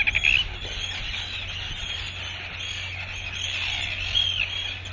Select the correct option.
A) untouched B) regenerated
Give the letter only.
A